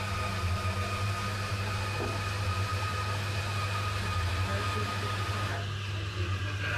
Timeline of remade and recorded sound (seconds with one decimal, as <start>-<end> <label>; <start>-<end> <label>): 0.0-6.8 recorded